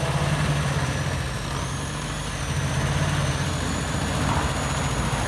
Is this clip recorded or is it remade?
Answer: recorded